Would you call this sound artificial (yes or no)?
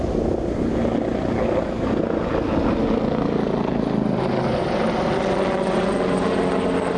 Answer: no